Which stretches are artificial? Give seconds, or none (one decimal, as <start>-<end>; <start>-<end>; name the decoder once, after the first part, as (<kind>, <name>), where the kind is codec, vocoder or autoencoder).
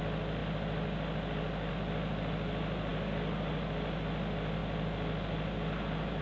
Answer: 4.6-6.2 (vocoder, BigVGAN v2)